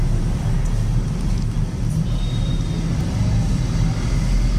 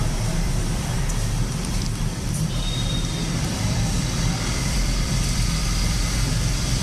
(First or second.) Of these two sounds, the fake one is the second